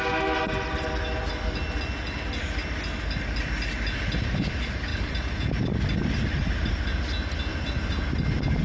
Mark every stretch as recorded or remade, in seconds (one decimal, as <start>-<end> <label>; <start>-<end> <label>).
0.0-7.5 recorded; 7.5-8.2 remade; 8.2-8.6 recorded